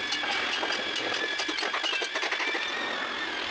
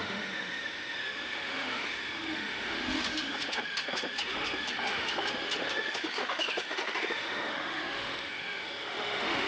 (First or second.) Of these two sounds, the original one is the first